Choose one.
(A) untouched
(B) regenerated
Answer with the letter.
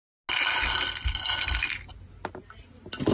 A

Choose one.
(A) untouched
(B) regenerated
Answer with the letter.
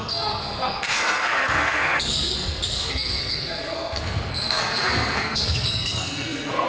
B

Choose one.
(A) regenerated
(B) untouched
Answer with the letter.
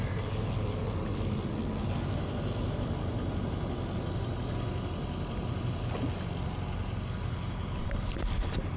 B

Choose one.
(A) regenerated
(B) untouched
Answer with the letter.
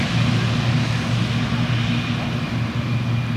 B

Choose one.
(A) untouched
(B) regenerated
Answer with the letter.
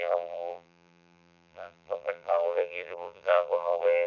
B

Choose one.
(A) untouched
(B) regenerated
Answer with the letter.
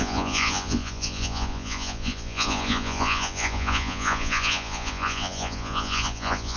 B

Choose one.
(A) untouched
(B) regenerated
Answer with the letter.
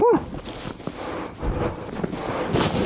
A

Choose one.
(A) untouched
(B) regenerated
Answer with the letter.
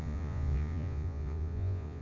B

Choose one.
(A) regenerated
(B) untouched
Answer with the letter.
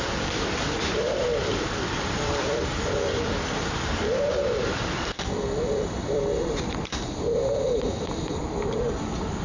A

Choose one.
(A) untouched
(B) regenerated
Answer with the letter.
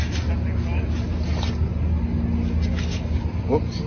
A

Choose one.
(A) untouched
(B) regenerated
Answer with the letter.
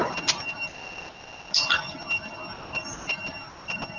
A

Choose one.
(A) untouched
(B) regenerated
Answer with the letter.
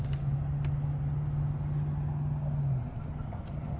A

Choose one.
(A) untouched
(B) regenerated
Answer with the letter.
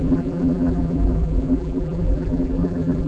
B